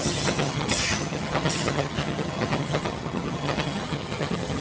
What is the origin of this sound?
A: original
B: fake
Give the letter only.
B